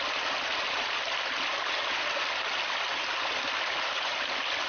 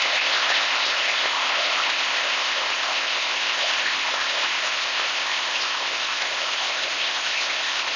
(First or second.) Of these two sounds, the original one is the first